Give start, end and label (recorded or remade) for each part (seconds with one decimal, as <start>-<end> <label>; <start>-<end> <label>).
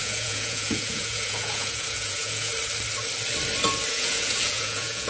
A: 0.0-2.5 remade; 2.5-3.9 recorded; 3.9-5.1 remade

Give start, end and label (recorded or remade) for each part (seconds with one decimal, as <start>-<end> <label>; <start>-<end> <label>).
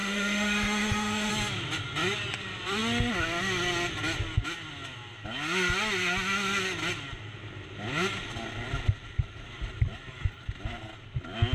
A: 0.0-1.3 remade; 1.3-11.5 recorded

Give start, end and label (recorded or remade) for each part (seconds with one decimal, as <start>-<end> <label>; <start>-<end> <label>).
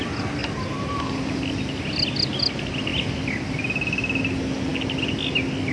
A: 0.0-5.7 recorded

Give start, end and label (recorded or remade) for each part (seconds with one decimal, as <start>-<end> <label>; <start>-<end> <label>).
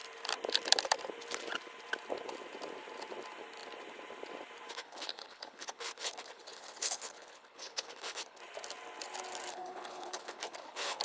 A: 0.0-4.7 recorded; 4.7-8.4 remade; 8.4-9.5 recorded; 9.5-11.0 remade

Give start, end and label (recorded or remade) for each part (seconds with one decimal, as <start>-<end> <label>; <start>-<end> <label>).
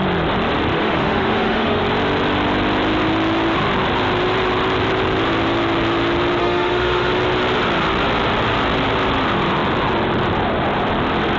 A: 0.0-0.7 recorded; 0.7-1.8 remade; 1.8-6.4 recorded; 6.4-7.1 remade; 7.1-11.4 recorded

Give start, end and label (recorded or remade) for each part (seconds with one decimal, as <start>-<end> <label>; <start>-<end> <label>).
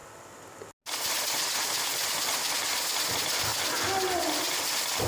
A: 0.0-5.1 recorded